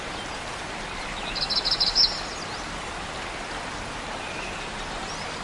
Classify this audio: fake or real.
real